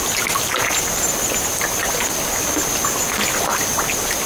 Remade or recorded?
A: recorded